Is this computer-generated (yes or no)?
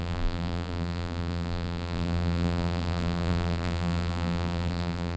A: yes